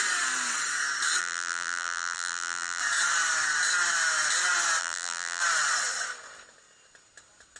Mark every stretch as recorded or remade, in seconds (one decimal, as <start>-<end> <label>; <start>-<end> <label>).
0.0-1.2 recorded; 1.2-2.8 remade; 2.8-4.8 recorded; 4.8-5.4 remade; 5.4-7.6 recorded